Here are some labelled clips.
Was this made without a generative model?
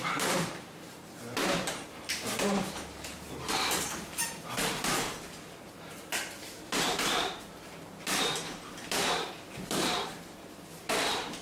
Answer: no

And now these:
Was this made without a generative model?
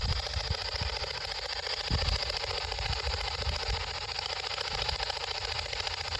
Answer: no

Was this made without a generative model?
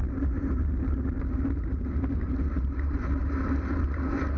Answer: no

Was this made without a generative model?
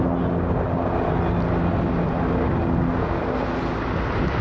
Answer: yes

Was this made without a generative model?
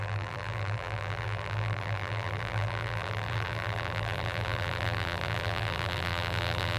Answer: no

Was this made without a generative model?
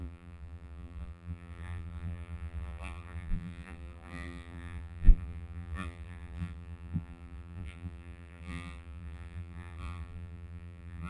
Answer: no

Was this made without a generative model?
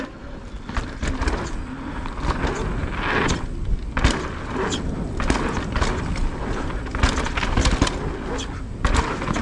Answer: yes